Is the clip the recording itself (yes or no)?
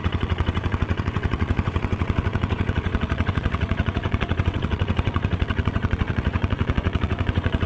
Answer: no